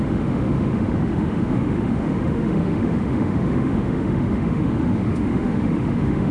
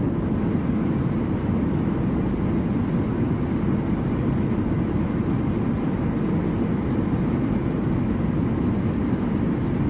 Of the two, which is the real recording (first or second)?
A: second